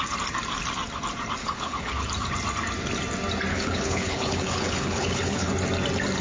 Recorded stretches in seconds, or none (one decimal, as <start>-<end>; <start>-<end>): 0.0-1.4; 1.9-3.5; 5.5-6.2